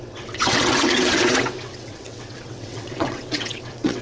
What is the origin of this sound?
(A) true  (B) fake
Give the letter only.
B